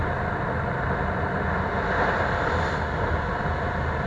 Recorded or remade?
recorded